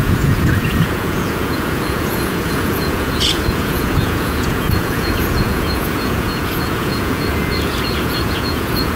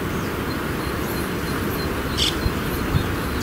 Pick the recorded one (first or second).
second